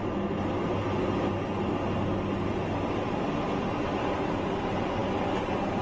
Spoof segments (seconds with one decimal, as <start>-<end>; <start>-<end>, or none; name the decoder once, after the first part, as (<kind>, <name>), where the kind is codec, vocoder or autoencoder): none